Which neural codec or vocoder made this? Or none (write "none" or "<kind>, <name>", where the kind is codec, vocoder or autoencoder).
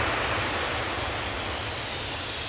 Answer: none